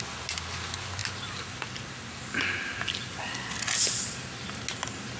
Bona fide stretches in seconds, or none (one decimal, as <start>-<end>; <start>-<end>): 0.0-5.2